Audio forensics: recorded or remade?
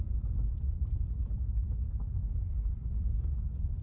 remade